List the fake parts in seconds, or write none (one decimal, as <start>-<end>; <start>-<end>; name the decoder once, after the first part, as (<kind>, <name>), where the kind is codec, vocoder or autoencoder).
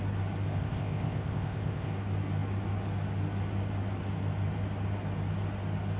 0.5-1.9 (codec, ZipCodec)